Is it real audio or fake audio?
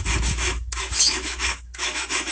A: fake